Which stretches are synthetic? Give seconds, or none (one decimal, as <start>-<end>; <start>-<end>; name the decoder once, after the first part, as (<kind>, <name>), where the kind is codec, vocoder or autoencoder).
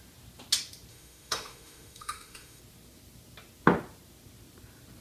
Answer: 0.9-2.6 (autoencoder, DAC-VAE)